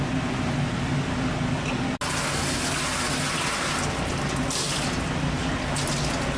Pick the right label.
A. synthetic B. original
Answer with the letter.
B